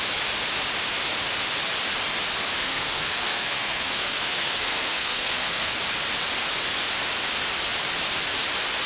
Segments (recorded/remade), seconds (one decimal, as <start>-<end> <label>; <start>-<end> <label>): 0.0-2.5 recorded; 2.5-5.8 remade; 5.8-8.9 recorded